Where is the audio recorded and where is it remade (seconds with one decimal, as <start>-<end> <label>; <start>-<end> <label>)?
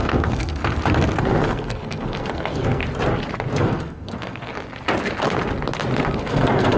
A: 0.0-0.6 remade; 0.6-1.2 recorded; 1.2-2.8 remade; 2.8-3.6 recorded; 3.6-4.5 remade; 4.5-6.1 recorded; 6.1-6.8 remade